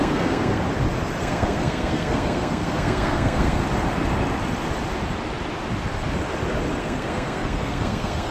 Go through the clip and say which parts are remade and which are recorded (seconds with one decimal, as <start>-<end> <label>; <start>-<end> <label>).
0.0-0.6 remade; 0.6-1.2 recorded; 1.2-3.6 remade; 3.6-6.8 recorded; 6.8-8.3 remade